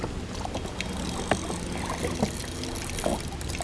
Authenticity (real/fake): real